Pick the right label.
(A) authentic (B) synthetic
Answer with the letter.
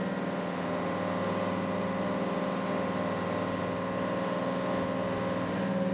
A